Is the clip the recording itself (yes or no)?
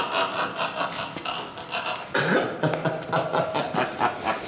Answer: yes